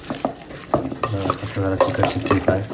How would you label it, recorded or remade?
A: recorded